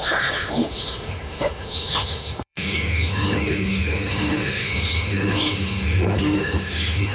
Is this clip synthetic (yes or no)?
yes